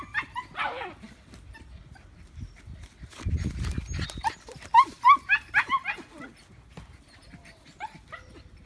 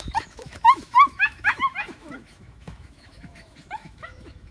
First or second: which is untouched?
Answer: first